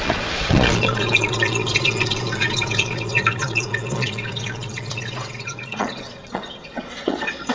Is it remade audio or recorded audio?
remade